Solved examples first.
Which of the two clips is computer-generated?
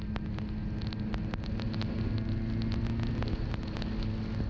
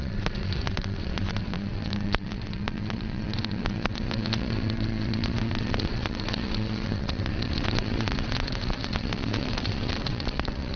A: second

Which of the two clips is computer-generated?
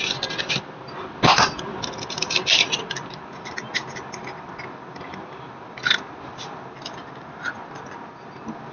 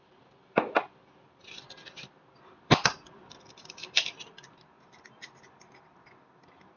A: second